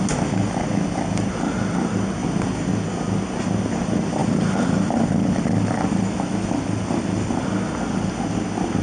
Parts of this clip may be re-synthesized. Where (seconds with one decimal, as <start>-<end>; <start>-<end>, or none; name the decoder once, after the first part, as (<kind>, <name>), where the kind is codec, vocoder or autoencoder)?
4.2-8.1 (vocoder, BigVGAN v2)